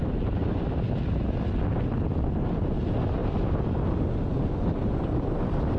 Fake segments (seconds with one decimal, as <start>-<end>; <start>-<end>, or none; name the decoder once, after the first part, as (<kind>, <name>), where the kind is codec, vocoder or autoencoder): 0.4-2.3 (vocoder, BigVGAN v2)